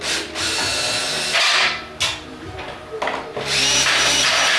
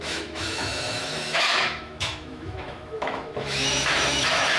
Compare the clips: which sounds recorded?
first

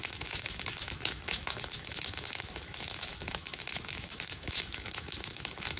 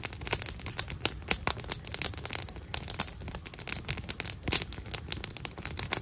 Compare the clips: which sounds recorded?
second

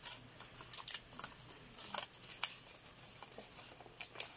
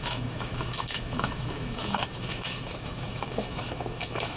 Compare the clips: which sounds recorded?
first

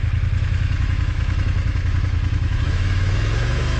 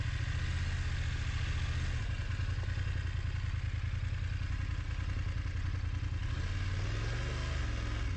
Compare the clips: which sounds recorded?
second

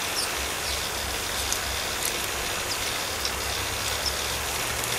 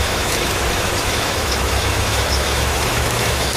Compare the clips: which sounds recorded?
first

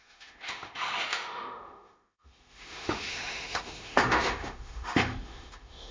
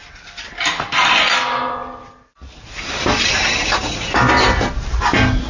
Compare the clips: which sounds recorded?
second